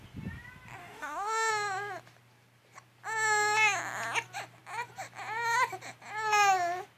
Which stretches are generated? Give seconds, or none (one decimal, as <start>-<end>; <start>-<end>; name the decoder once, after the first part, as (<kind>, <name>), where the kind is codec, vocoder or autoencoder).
0.8-1.5 (autoencoder, DAC-VAE)